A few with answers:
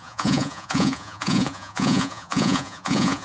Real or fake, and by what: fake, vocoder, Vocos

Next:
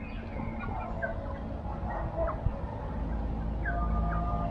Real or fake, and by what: real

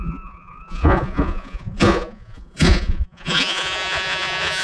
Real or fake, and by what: fake, vocoder, Vocos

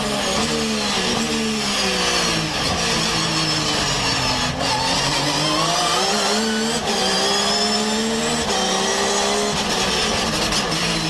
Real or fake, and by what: real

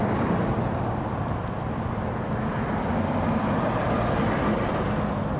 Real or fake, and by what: real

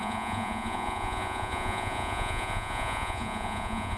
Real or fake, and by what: fake, vocoder, Vocos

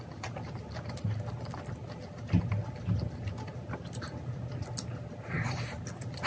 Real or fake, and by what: real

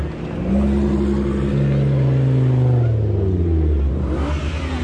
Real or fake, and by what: real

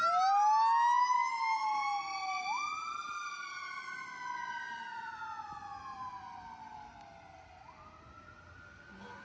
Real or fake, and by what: real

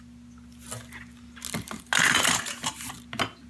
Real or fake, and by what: real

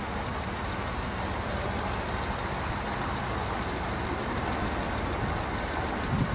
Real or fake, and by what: real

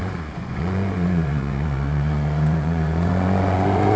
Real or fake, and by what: fake, vocoder, Vocos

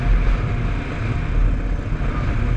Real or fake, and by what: real